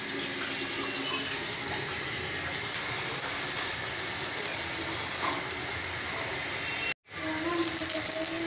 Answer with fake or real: real